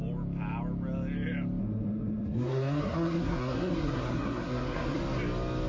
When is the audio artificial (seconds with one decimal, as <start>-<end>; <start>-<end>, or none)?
1.6-5.0